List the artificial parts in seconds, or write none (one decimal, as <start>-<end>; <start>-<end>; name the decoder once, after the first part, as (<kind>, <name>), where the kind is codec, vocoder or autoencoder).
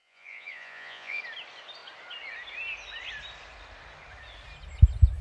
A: 0.0-1.2 (vocoder, Vocos)